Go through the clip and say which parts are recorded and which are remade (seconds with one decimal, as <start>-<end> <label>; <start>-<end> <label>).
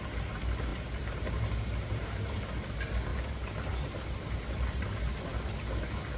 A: 0.0-0.7 recorded; 0.7-2.4 remade; 2.4-3.1 recorded; 3.1-5.0 remade; 5.0-6.2 recorded